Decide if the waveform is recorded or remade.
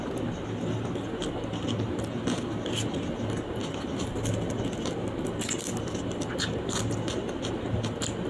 recorded